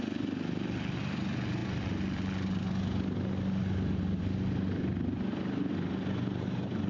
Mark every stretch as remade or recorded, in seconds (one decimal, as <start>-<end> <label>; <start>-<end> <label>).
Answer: 0.0-6.9 recorded